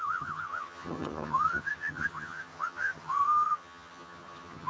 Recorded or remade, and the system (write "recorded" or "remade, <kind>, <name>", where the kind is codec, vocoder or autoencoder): remade, vocoder, HiFi-GAN